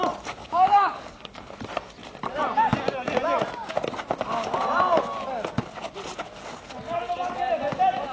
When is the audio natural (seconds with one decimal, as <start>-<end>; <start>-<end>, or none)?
0.0-0.4; 1.6-8.1

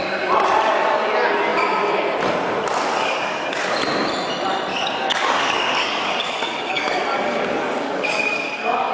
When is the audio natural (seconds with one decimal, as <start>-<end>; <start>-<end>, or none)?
0.0-2.9; 3.6-4.7

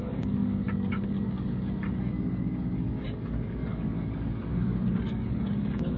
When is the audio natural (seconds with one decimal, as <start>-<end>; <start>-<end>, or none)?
none

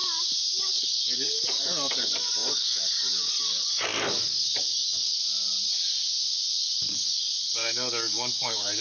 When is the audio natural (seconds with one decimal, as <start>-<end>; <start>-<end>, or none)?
0.0-0.6; 5.2-6.6